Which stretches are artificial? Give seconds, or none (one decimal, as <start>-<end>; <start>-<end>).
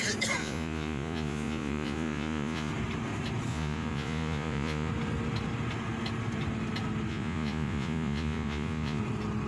0.4-2.7; 3.5-4.9; 7.1-9.0